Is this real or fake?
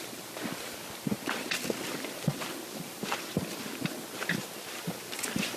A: real